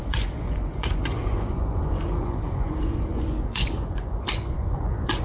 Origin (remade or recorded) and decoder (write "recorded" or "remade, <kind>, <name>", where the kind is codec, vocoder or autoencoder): remade, vocoder, Vocos